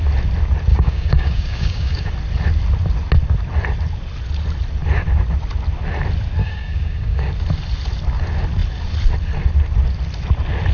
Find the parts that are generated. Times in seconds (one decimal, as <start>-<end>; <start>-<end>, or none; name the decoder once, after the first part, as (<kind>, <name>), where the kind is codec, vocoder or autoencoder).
0.7-2.1 (codec, DAC); 6.4-7.3